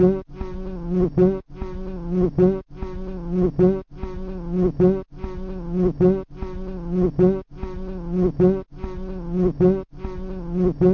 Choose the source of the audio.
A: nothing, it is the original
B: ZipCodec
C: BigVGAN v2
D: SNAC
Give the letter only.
A